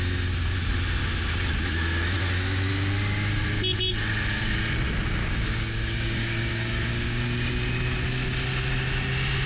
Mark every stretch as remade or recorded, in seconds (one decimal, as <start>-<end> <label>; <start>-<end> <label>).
0.0-5.2 recorded; 5.2-7.2 remade; 7.2-9.5 recorded